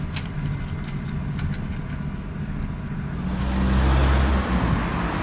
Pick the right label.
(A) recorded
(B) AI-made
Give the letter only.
A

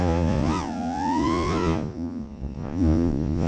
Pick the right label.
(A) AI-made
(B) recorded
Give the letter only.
A